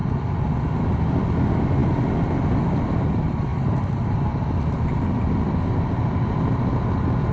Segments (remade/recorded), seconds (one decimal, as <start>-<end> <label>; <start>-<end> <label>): 0.0-7.3 recorded